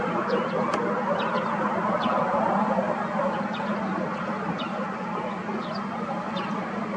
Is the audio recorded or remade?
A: recorded